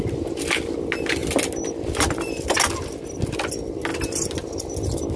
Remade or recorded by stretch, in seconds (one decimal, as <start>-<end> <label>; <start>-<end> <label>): 0.0-5.2 recorded